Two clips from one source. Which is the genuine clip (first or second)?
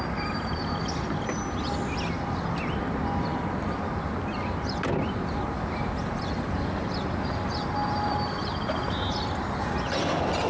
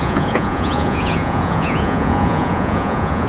first